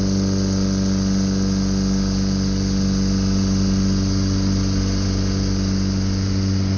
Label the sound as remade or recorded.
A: recorded